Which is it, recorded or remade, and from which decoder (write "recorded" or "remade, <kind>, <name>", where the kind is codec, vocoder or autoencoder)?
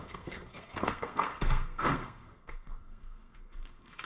remade, codec, SNAC